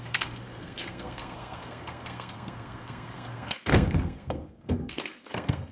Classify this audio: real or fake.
fake